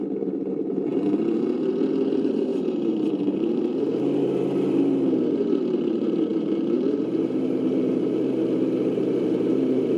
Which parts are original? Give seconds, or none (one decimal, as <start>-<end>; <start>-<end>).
0.9-2.1